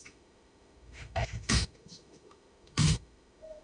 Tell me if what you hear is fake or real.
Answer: fake